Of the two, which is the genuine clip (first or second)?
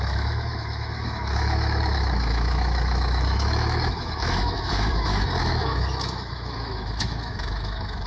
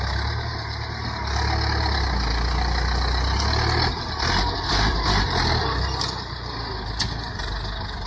second